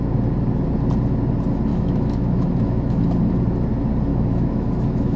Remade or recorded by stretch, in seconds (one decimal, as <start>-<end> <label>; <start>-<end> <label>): 0.0-1.7 recorded; 1.7-3.0 remade; 3.0-4.1 recorded; 4.1-5.2 remade